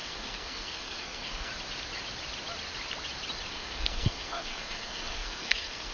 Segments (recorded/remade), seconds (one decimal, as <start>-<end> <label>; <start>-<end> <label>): 0.0-1.5 remade; 1.5-3.5 recorded; 3.5-5.9 remade